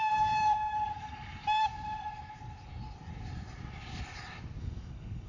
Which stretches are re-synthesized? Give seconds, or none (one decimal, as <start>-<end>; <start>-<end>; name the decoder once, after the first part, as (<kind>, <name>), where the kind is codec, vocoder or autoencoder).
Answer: 0.0-1.7 (codec, DAC); 4.6-5.3